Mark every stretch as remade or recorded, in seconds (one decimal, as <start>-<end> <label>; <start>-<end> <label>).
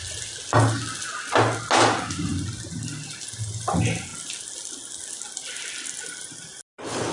0.0-7.1 recorded